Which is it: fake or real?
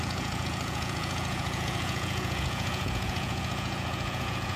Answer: fake